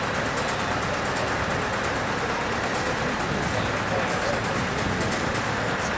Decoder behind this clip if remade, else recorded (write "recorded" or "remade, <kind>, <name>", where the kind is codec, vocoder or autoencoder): recorded